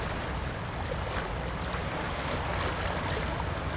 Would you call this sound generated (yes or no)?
no